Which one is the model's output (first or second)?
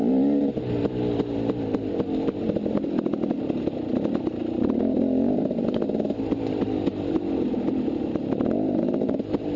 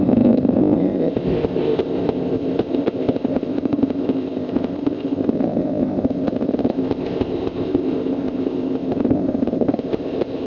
second